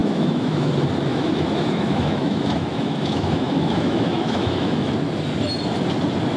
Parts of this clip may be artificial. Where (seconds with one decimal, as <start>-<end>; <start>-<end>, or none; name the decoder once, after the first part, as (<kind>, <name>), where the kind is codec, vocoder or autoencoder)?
0.0-0.7 (autoencoder, DAC-VAE); 1.1-4.9